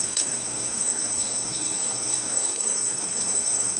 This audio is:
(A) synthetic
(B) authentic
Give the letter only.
A